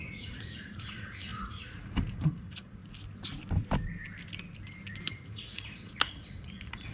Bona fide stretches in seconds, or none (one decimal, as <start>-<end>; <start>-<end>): 2.8-5.1